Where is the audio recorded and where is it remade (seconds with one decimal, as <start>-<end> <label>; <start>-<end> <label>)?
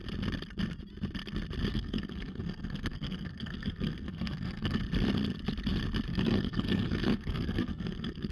0.0-1.7 recorded; 1.7-4.8 remade; 4.8-6.1 recorded; 6.1-8.3 remade